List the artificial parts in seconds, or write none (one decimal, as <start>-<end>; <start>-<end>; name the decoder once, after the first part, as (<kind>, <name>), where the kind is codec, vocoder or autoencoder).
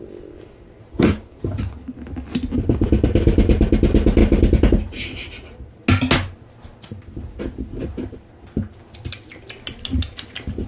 0.9-1.4 (codec, SNAC)